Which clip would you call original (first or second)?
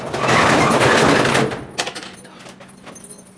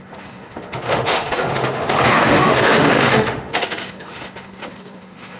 first